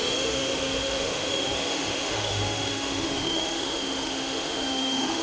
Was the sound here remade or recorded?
remade